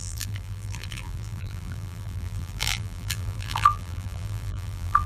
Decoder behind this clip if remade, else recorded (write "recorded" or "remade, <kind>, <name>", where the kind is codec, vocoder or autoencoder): remade, vocoder, BigVGAN v2